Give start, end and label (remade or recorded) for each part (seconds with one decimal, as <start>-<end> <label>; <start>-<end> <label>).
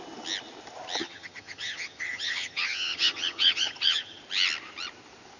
0.0-1.0 recorded; 1.0-4.2 remade; 4.2-5.4 recorded